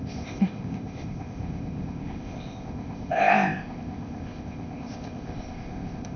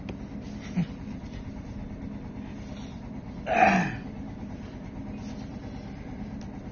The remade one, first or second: first